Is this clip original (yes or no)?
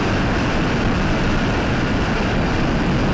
yes